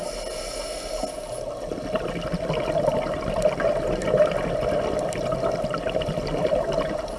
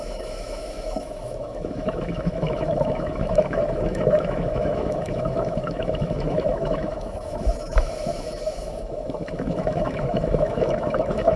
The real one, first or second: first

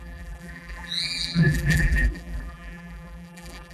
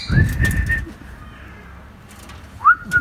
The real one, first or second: second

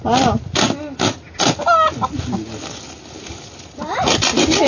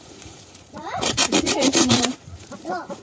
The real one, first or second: first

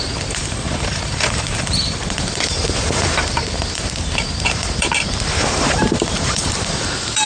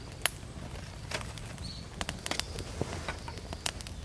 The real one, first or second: second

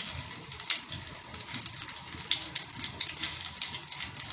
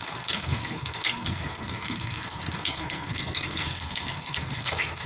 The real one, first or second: first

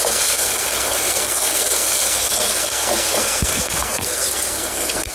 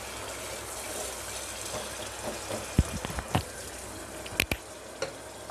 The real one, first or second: second